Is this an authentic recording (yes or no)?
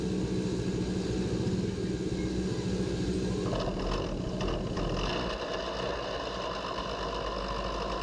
yes